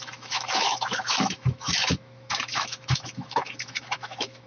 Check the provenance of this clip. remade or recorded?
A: remade